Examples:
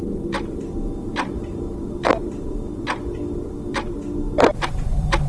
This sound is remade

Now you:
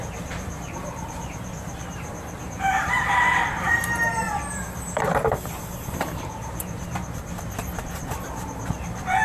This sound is remade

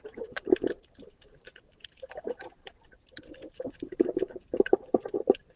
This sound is remade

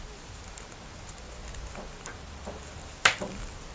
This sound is recorded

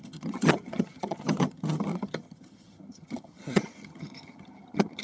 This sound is remade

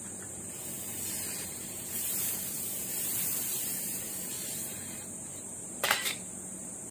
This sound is remade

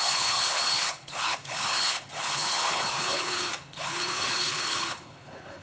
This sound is remade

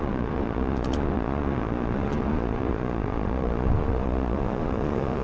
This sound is remade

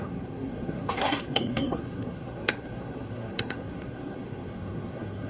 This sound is remade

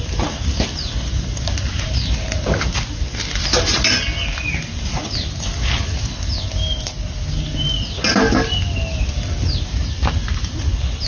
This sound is recorded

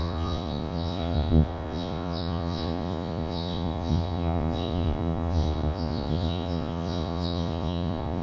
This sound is remade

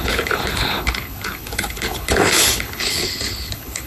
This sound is remade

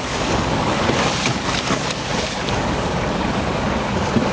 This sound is remade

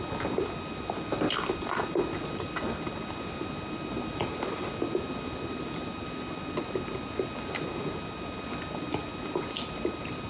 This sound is recorded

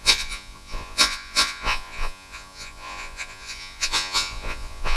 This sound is remade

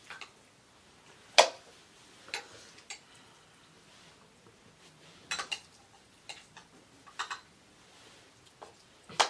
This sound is recorded